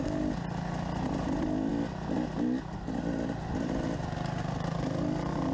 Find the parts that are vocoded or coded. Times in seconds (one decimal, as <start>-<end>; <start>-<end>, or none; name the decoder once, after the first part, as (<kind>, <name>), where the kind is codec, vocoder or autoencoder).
none